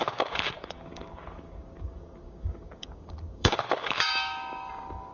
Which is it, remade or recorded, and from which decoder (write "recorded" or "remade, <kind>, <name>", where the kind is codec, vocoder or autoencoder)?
remade, codec, DAC